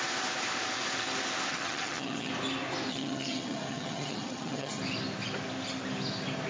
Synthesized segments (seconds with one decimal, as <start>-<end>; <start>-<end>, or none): 1.5-2.3; 2.9-4.8